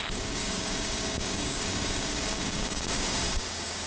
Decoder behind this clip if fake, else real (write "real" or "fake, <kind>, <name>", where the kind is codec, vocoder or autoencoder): fake, codec, DAC